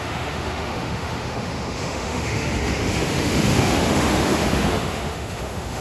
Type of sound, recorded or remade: remade